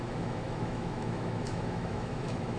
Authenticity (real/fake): fake